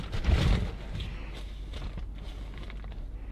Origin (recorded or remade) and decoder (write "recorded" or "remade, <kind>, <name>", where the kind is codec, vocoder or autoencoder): recorded